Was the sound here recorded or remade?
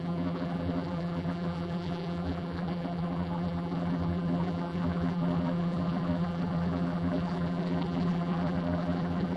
remade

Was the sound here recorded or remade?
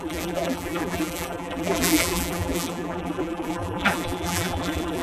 remade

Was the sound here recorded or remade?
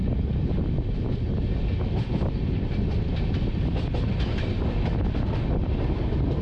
recorded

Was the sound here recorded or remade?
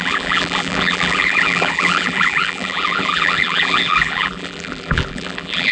remade